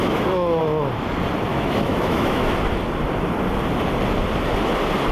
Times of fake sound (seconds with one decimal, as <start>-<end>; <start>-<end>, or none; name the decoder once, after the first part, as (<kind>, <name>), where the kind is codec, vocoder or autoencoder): 0.0-0.6 (autoencoder, DAC-VAE); 1.5-2.5